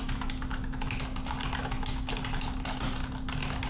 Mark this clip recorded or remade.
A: recorded